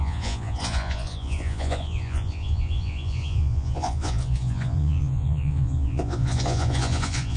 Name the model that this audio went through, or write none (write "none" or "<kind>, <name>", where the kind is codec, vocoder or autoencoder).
vocoder, Vocos